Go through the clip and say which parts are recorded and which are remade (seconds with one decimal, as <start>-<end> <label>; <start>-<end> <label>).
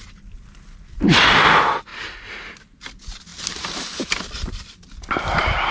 0.0-5.7 recorded